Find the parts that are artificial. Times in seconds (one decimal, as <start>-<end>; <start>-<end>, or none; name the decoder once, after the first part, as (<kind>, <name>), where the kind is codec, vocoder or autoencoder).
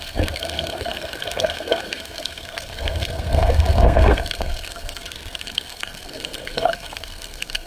0.0-7.7 (codec, SNAC)